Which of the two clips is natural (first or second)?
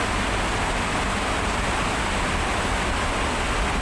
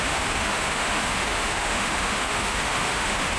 first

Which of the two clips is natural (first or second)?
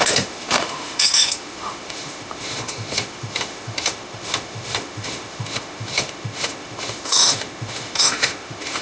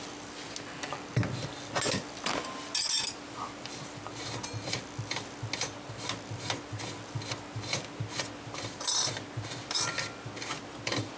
second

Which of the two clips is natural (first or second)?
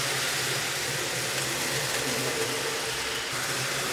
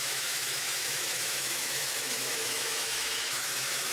first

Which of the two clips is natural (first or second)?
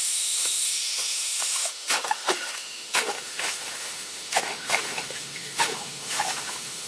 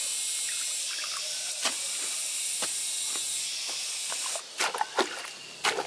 second